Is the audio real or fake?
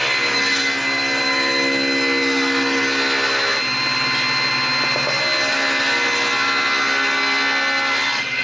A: real